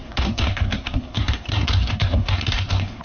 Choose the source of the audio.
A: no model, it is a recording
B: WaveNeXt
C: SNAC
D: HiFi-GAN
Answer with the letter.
C